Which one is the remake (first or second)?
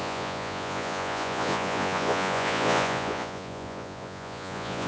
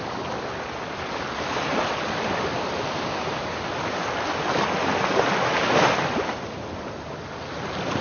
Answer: first